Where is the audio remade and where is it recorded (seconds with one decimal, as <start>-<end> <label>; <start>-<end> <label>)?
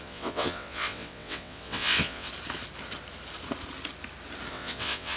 0.0-2.3 remade; 2.3-4.5 recorded; 4.5-5.2 remade